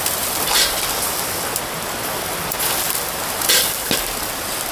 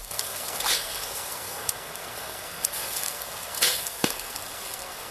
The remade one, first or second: second